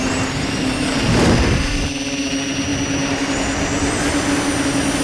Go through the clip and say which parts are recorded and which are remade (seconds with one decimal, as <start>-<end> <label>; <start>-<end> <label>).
0.0-5.0 recorded